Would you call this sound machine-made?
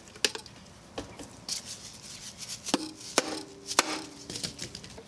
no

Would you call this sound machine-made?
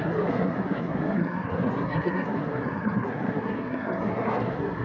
yes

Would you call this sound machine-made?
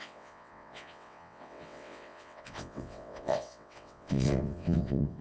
yes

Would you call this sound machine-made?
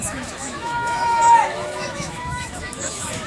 yes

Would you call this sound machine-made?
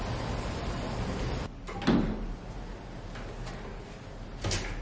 no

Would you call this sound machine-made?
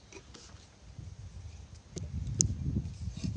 no